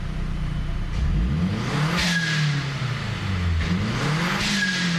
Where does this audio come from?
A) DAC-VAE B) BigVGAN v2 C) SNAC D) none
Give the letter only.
D